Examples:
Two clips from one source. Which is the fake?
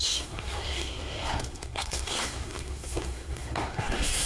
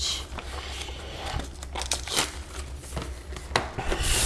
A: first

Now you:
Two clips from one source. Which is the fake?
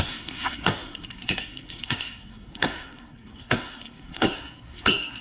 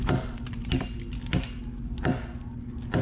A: first